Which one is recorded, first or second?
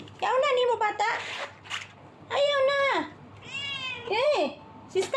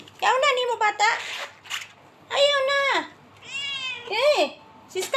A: second